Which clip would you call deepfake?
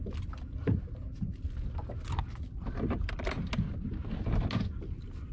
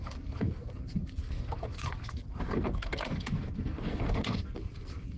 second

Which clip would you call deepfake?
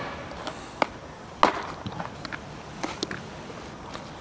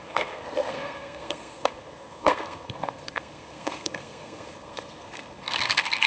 second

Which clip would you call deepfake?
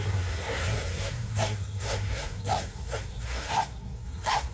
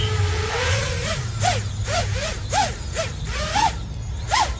first